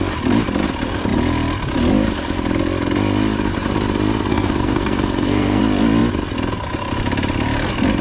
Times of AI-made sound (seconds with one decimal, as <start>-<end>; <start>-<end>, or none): 4.3-5.6